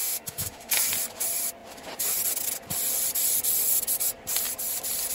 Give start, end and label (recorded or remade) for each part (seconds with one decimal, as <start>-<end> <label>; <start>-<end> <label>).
0.0-0.7 remade; 0.7-5.1 recorded